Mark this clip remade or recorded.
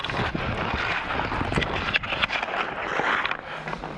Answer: recorded